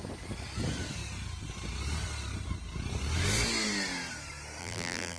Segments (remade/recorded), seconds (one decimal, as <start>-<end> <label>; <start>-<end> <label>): 0.0-4.6 recorded; 4.6-5.2 remade